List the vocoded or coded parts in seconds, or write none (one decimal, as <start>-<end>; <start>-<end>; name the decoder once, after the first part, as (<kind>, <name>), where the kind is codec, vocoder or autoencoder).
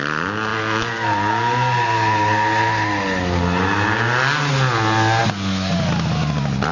none